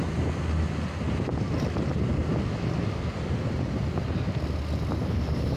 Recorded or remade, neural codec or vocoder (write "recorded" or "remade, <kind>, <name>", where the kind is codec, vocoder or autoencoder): recorded